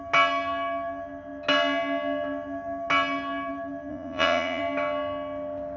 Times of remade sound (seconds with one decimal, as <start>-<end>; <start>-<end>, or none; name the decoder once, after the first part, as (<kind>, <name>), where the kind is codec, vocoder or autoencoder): 3.9-4.6 (vocoder, Vocos)